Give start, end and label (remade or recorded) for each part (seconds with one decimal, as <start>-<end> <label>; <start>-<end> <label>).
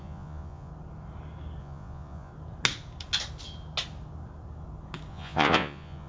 0.0-0.7 remade; 0.7-1.6 recorded; 1.6-2.3 remade; 2.3-5.1 recorded; 5.1-6.1 remade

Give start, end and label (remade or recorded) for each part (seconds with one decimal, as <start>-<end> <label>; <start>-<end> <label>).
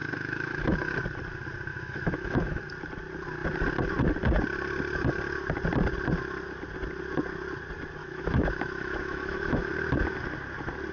0.0-0.9 remade; 0.9-1.7 recorded; 1.7-2.6 remade; 2.6-8.0 recorded; 8.0-9.7 remade; 9.7-10.9 recorded